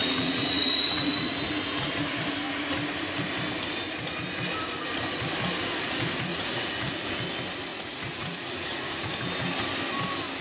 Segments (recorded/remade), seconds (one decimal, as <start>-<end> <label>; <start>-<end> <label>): 0.0-1.9 remade; 1.9-6.3 recorded; 6.3-7.1 remade; 7.1-7.7 recorded; 7.7-9.1 remade; 9.1-10.4 recorded